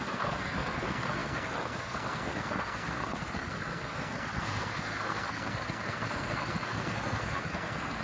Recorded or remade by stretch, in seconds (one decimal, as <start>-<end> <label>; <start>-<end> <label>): 0.0-8.0 remade